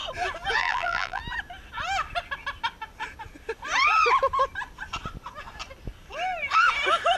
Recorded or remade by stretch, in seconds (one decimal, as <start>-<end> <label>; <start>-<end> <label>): 0.0-0.6 recorded; 0.6-1.2 remade; 1.2-7.2 recorded